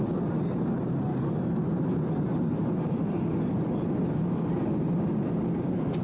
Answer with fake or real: real